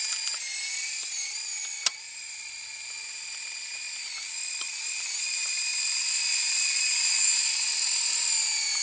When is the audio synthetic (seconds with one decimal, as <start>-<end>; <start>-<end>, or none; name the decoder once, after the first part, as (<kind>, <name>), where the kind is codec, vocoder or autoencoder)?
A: 1.5-2.5 (vocoder, BigVGAN v2); 5.7-6.8